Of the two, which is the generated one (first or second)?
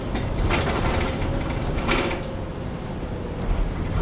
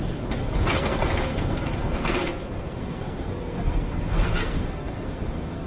second